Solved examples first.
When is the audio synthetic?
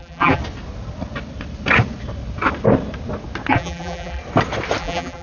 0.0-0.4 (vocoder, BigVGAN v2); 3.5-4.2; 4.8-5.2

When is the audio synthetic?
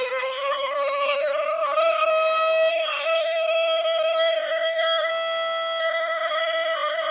0.0-2.1 (codec, SNAC); 2.7-5.1; 5.8-7.1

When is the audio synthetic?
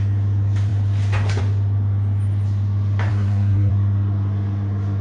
3.1-3.7 (codec, SNAC)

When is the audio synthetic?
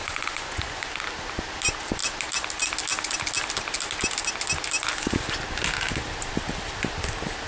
0.0-0.9 (vocoder, Vocos)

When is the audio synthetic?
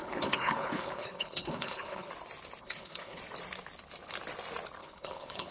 0.0-2.1 (codec, HILCodec); 2.6-3.2; 4.8-5.5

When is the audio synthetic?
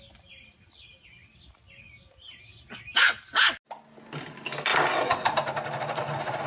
none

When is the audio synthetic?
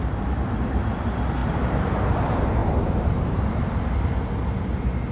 1.4-2.0 (vocoder, BigVGAN v2); 2.6-3.6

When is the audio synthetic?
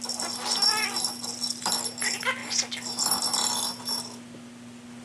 none